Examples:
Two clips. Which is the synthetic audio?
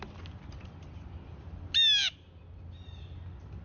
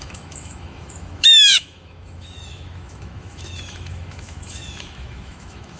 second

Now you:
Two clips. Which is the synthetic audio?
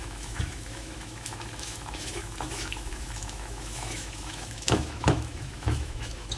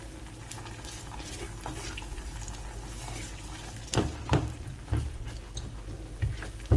first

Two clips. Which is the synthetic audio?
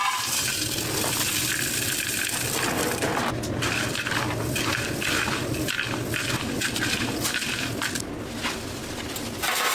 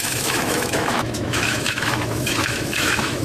second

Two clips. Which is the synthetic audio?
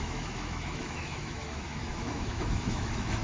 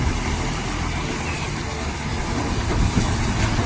first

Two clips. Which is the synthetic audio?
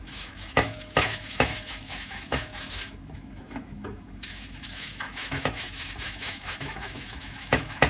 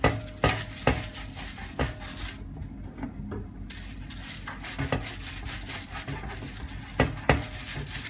first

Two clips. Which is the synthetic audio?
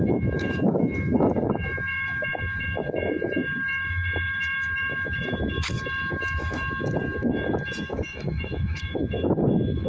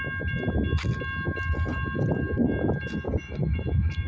first